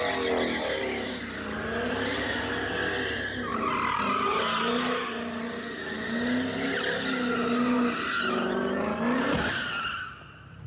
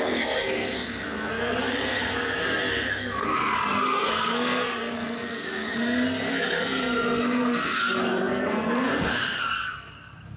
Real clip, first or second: first